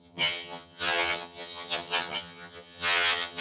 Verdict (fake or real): fake